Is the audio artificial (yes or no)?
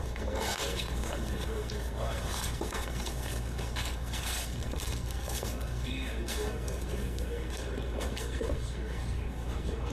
yes